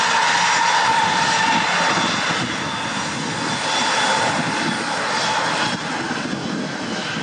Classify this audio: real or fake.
real